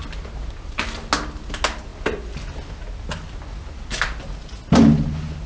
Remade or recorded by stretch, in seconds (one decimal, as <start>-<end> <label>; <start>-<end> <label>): 0.0-5.5 recorded